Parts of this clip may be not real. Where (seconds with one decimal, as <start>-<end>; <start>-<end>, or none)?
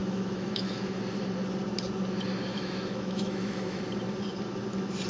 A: 0.0-1.0; 2.5-3.8